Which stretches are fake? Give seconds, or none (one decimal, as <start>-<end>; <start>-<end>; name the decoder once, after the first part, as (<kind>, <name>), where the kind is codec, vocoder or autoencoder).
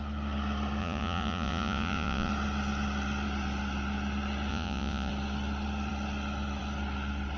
0.8-2.3 (vocoder, Vocos); 4.5-5.1